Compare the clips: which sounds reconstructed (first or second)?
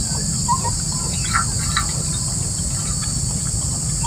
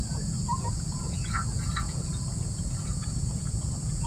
second